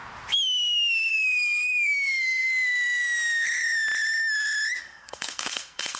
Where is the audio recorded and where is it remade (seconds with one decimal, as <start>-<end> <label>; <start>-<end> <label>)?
0.0-1.1 recorded; 1.1-2.5 remade; 2.5-4.8 recorded; 4.8-6.0 remade